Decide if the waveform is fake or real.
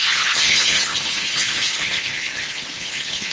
fake